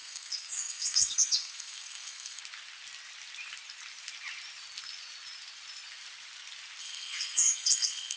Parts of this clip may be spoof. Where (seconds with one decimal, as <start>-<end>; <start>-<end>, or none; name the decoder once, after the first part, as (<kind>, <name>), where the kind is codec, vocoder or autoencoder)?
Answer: 0.0-2.4 (codec, SNAC); 6.8-8.2